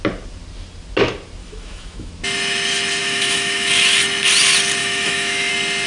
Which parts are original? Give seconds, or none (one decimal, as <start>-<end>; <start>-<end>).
0.0-1.4; 2.1-3.0; 3.7-4.8; 5.5-5.9